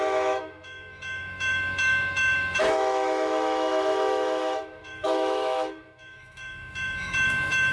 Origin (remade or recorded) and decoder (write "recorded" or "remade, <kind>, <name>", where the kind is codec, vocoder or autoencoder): remade, autoencoder, DAC-VAE